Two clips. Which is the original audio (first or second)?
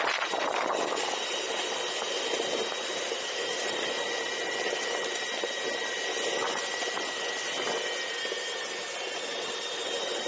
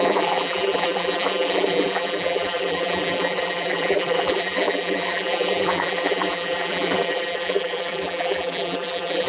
first